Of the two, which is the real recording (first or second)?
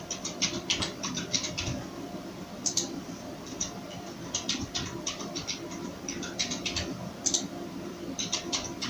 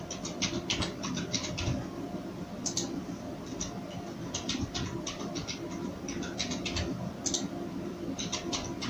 second